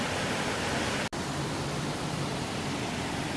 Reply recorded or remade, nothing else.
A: recorded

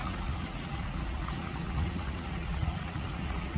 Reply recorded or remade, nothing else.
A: remade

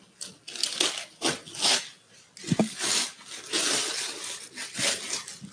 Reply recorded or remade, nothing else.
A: recorded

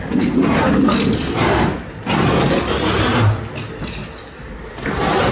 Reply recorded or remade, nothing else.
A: recorded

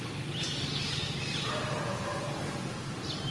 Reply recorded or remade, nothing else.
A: recorded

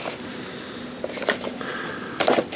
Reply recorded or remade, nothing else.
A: recorded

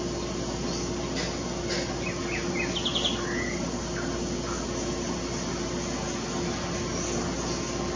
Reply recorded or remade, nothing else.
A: recorded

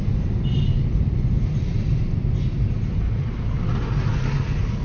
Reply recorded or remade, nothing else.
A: recorded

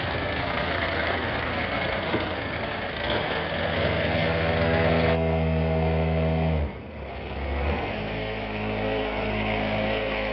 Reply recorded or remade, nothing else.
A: remade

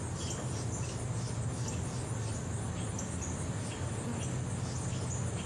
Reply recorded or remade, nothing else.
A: recorded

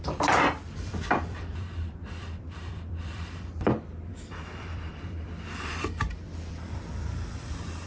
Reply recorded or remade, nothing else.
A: remade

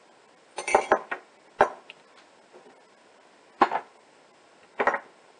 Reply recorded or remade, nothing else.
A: recorded